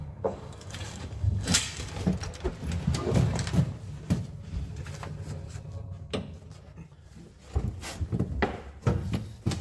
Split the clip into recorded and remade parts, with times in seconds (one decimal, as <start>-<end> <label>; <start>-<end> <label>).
0.0-1.9 remade; 1.9-9.6 recorded